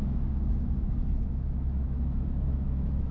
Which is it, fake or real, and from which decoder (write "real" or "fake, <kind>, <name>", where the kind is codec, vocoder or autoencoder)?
fake, autoencoder, DAC-VAE